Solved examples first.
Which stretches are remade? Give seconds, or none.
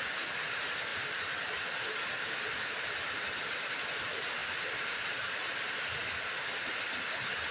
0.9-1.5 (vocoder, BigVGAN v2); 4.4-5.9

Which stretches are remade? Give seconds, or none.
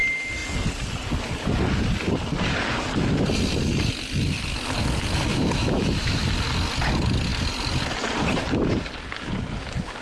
5.3-6.2 (autoencoder, DAC-VAE)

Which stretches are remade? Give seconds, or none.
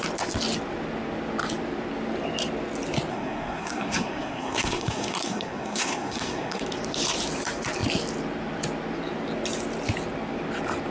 3.1-6.6 (codec, SNAC)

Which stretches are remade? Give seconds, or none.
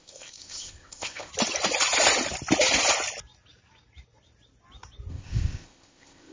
0.0-1.3 (codec, ZipCodec); 5.1-6.3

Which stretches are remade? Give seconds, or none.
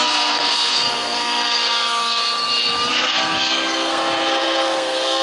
0.0-2.2 (codec, SNAC); 2.9-5.2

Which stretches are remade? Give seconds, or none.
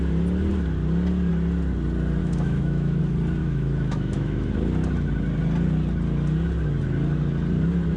2.2-3.0 (autoencoder, DAC-VAE); 3.4-4.5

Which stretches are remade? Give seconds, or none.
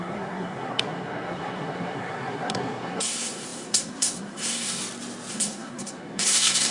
0.0-4.8 (codec, SNAC); 5.3-6.7